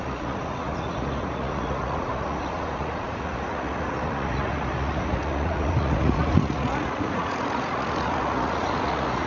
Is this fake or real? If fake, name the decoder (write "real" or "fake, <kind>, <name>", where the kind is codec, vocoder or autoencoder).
fake, vocoder, Vocos